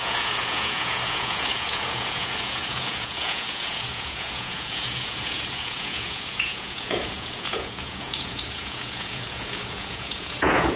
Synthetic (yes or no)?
yes